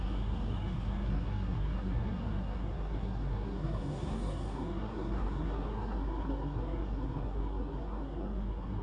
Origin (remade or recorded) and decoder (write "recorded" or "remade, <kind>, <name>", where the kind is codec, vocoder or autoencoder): remade, codec, SNAC